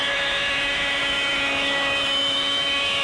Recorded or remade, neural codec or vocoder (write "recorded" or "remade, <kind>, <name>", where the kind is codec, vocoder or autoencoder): remade, autoencoder, DAC-VAE